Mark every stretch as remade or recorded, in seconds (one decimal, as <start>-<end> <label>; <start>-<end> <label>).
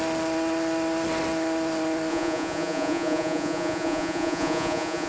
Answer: 0.0-2.1 recorded; 2.1-5.1 remade